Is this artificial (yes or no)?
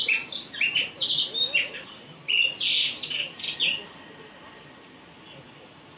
no